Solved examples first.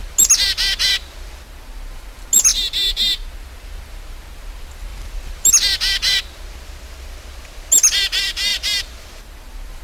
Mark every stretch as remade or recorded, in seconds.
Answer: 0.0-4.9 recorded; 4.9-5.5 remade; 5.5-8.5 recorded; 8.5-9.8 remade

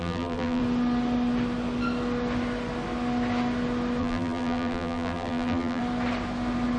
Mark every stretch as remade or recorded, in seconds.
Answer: 0.0-0.6 remade; 0.6-4.0 recorded; 4.0-5.8 remade; 5.8-6.8 recorded

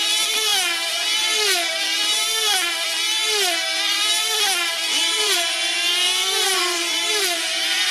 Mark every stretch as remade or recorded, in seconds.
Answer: 0.0-5.0 recorded; 5.0-7.9 remade

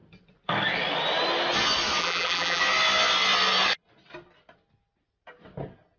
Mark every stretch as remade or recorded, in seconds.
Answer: 0.0-2.0 recorded; 2.0-2.6 remade; 2.6-6.0 recorded